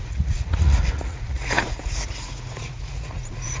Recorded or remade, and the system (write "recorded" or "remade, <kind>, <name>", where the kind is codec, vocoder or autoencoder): remade, vocoder, Vocos